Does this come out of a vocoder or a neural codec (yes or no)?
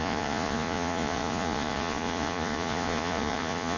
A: yes